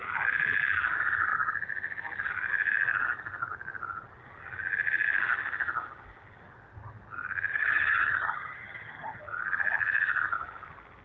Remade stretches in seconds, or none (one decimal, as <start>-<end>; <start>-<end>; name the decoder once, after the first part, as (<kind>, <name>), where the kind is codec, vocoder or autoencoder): 7.5-9.2 (vocoder, HiFi-GAN)